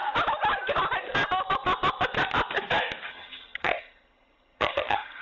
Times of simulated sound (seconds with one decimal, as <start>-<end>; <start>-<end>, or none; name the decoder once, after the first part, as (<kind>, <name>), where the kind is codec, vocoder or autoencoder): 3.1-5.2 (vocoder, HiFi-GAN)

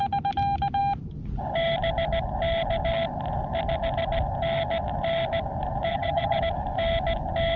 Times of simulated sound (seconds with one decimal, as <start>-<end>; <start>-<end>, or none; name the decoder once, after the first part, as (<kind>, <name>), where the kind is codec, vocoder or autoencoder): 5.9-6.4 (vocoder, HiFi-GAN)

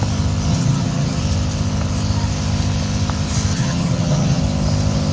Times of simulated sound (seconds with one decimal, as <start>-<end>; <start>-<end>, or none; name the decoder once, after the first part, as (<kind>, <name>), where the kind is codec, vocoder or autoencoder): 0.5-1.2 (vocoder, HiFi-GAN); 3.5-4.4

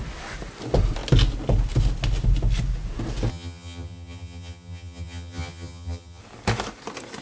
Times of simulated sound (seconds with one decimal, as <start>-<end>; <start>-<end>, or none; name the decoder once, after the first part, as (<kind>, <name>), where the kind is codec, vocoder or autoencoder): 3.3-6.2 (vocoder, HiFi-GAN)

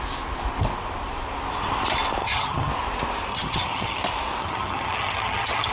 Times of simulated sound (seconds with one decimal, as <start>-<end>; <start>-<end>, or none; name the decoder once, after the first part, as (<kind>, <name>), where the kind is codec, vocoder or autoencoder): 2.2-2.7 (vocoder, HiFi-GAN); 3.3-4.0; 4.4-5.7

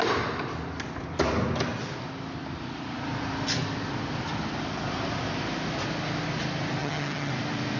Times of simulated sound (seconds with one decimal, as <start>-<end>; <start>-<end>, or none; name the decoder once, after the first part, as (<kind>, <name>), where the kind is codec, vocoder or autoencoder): 6.8-7.3 (vocoder, HiFi-GAN)

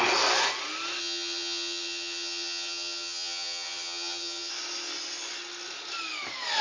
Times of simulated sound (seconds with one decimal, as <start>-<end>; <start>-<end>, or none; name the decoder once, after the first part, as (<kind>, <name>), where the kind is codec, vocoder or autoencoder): 1.0-4.5 (vocoder, HiFi-GAN)

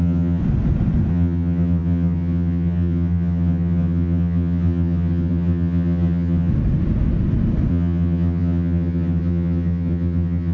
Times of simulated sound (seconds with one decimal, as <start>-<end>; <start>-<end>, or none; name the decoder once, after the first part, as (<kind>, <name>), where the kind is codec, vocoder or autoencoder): 0.0-0.4 (vocoder, HiFi-GAN); 1.1-6.5; 7.7-10.5